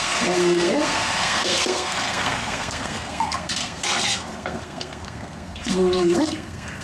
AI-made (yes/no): yes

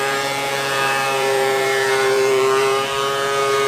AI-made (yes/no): yes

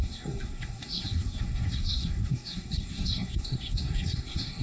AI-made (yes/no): yes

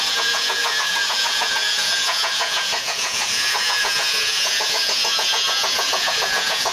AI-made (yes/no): yes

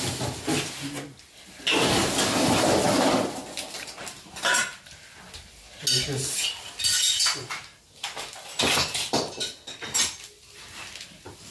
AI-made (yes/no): no